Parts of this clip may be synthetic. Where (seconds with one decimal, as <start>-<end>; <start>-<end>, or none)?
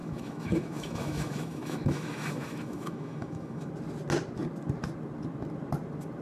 0.0-3.7